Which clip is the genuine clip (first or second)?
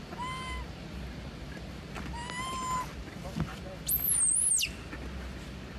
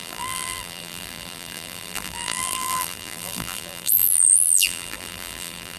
first